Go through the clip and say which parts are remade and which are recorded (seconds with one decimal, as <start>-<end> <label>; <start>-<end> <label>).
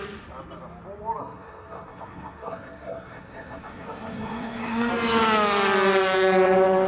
0.0-1.2 recorded; 1.2-4.9 remade; 4.9-6.9 recorded